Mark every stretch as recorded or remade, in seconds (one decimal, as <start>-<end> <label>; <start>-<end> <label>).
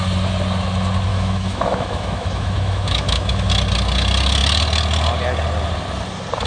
0.0-1.1 recorded; 1.1-3.5 remade; 3.5-6.5 recorded